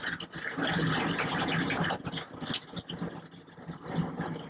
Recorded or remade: recorded